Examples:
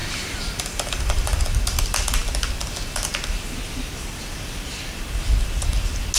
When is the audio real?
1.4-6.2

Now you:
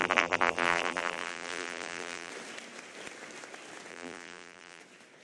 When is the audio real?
2.3-3.9; 4.8-5.2